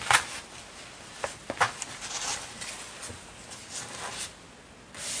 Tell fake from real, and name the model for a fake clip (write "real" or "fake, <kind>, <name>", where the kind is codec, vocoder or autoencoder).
real